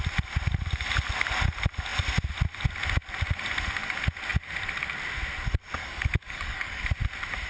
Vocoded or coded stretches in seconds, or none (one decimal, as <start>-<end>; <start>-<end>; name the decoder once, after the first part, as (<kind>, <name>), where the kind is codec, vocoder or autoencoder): 5.8-6.8 (codec, DAC)